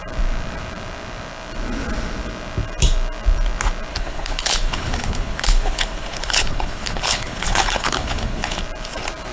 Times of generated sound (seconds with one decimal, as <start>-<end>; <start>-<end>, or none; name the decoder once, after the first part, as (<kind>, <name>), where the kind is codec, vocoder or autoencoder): 3.9-8.6 (codec, HILCodec)